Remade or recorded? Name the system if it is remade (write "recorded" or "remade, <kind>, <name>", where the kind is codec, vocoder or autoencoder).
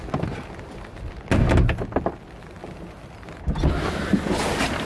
recorded